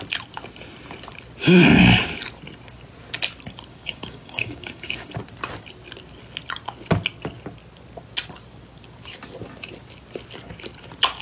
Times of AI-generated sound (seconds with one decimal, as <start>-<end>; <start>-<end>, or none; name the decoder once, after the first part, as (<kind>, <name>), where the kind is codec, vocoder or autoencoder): 1.4-2.0 (codec, DAC); 3.7-5.1

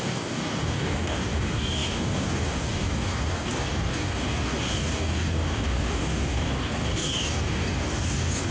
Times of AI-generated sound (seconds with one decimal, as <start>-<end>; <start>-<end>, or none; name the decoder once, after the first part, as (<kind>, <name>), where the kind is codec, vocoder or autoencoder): 0.0-8.5 (codec, DAC)

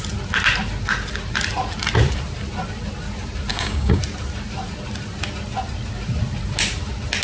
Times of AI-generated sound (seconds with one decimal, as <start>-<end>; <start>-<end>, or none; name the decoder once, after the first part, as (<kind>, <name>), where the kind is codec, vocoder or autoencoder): 3.5-4.0 (codec, DAC)